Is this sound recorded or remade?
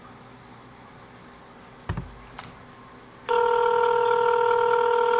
recorded